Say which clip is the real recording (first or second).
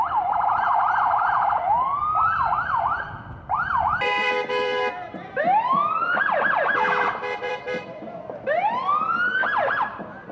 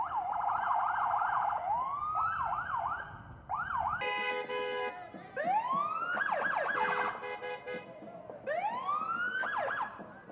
second